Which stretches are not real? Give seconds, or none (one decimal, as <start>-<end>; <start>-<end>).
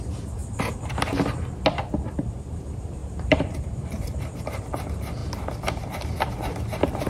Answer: 3.0-4.6